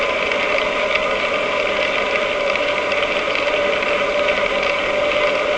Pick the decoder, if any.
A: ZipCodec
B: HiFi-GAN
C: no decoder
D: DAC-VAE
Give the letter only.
C